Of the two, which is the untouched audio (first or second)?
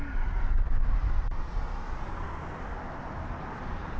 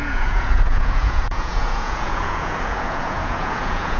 first